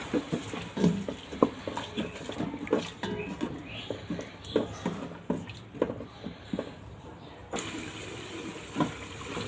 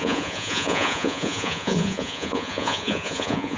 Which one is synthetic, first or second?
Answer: second